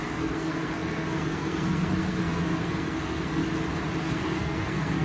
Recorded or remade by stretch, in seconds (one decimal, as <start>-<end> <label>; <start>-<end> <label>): 0.0-3.4 remade; 3.4-4.0 recorded; 4.0-5.0 remade

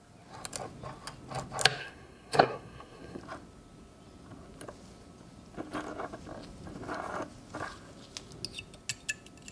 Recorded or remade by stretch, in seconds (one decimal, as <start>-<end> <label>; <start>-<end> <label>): 0.0-1.8 recorded; 1.8-3.2 remade; 3.2-9.5 recorded

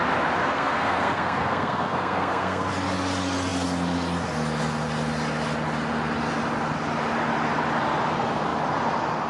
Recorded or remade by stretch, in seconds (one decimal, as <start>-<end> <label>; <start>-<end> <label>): 0.0-0.4 recorded; 0.4-2.7 remade; 2.7-9.3 recorded

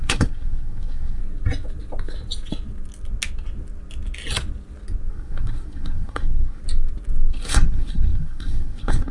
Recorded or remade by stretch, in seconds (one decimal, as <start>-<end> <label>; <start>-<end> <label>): 0.0-1.2 remade; 1.2-5.1 recorded; 5.1-6.6 remade; 6.6-7.3 recorded; 7.3-9.1 remade

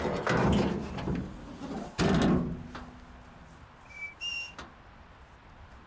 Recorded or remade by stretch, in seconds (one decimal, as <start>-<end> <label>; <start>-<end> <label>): 0.0-5.9 recorded